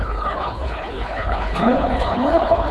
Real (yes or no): no